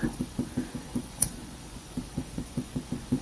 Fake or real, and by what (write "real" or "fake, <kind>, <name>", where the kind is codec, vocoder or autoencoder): fake, vocoder, Vocos